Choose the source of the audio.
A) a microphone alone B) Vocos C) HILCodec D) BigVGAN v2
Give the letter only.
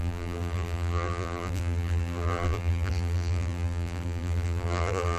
D